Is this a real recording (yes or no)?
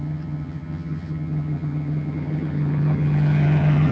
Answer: no